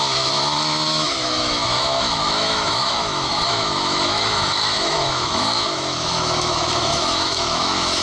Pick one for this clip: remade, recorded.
remade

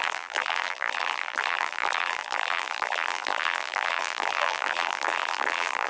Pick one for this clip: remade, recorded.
remade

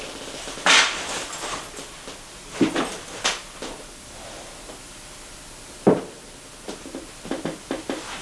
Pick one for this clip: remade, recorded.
recorded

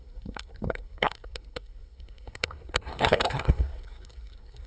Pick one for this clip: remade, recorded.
remade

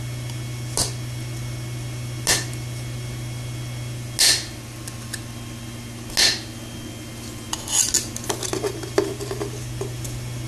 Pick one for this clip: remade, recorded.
recorded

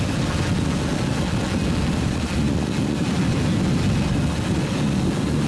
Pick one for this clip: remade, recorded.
recorded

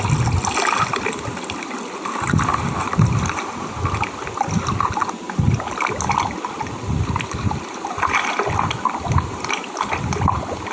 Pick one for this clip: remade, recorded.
recorded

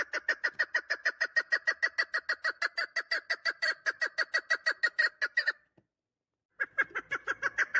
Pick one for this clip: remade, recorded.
recorded